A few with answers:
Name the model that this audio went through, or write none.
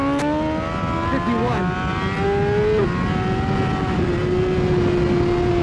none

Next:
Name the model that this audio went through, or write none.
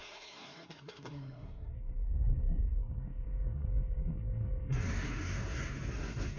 codec, SNAC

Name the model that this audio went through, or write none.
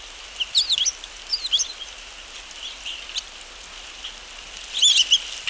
none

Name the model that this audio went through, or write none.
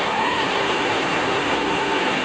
codec, SNAC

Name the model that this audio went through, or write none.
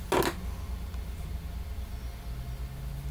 none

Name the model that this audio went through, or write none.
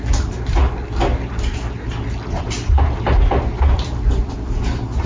none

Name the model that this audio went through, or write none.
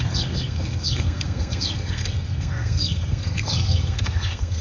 codec, SNAC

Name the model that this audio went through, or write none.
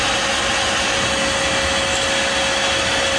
none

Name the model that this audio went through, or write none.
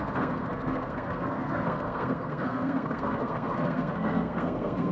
codec, SNAC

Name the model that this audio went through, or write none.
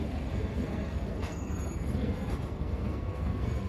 codec, SNAC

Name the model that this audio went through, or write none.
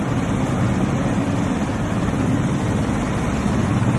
none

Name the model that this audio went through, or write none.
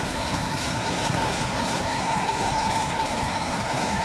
codec, SNAC